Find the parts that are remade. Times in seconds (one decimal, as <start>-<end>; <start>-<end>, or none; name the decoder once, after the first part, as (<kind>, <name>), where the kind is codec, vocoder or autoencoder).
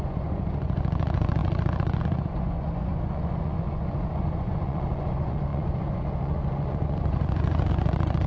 0.0-8.3 (vocoder, Vocos)